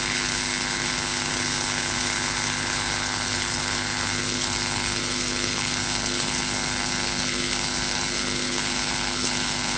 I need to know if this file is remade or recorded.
remade